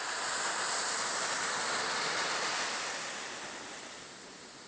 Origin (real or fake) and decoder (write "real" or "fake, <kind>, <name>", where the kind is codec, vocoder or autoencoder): real